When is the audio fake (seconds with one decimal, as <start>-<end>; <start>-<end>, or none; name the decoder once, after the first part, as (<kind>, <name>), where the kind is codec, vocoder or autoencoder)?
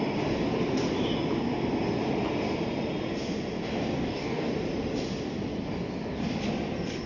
3.9-4.5 (codec, DAC)